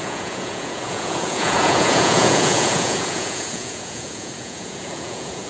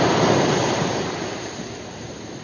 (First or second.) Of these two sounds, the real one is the second